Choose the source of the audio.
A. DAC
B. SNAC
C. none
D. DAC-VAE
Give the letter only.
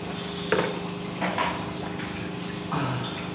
C